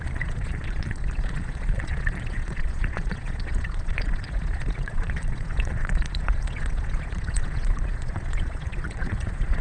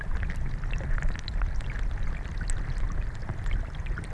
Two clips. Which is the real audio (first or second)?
second